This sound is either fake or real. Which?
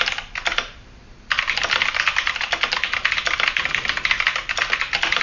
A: real